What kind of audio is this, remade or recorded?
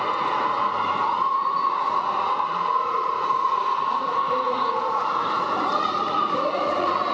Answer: remade